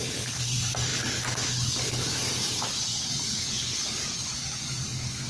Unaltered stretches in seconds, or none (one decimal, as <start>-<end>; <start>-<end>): none